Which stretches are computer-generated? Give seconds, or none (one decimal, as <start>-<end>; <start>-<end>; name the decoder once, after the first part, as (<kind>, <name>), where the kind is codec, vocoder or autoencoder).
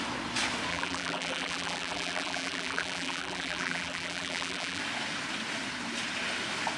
0.7-4.8 (vocoder, BigVGAN v2)